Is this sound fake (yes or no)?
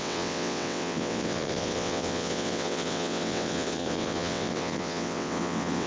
yes